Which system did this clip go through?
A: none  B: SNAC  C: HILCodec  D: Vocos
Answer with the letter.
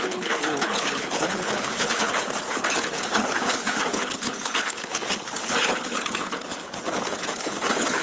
C